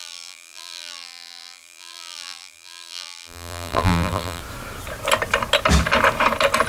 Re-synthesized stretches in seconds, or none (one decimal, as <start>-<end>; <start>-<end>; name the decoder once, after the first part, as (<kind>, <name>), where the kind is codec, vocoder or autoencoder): 0.0-4.4 (vocoder, BigVGAN v2)